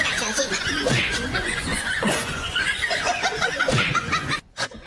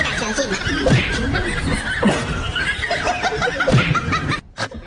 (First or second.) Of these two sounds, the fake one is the first